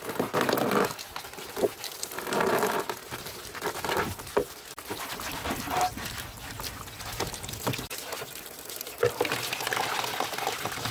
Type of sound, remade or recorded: recorded